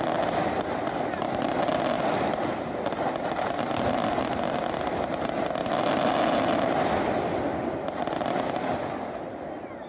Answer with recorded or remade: recorded